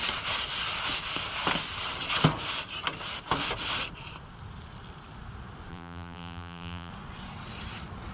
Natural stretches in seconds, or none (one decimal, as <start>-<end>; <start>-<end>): 0.0-5.7; 6.9-8.1